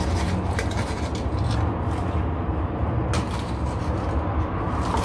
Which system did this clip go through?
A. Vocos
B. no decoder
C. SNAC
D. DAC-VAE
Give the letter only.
B